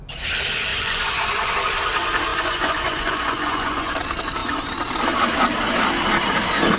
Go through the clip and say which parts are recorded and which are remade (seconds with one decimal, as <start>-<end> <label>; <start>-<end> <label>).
0.0-0.7 recorded; 0.7-1.5 remade; 1.5-2.3 recorded; 2.3-3.9 remade; 3.9-6.8 recorded